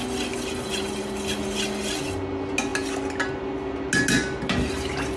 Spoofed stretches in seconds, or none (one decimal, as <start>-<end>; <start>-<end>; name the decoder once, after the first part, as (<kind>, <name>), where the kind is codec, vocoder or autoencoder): none